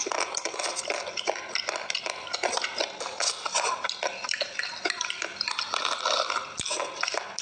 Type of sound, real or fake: real